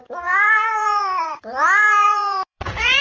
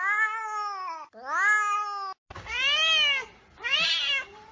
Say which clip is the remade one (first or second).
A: first